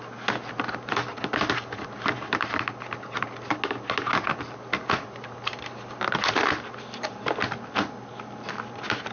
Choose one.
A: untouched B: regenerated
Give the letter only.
A